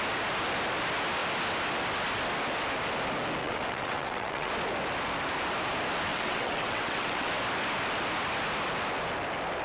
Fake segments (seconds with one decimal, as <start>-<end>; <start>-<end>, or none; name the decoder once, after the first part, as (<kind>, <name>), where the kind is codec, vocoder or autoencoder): 3.4-4.5 (vocoder, WaveNeXt); 6.1-7.3